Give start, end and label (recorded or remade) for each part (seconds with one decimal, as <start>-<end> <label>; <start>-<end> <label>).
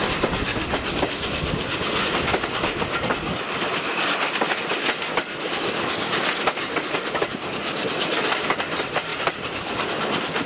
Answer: 0.0-10.5 recorded